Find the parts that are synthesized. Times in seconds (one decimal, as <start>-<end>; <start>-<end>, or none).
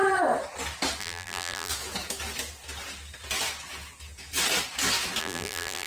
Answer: 1.0-1.7; 5.2-5.9